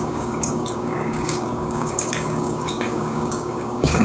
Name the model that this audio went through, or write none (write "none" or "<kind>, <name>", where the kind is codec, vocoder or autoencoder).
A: codec, DAC